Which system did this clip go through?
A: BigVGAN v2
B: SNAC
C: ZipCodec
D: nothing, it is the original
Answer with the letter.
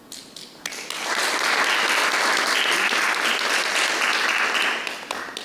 D